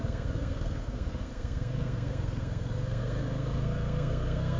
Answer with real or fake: fake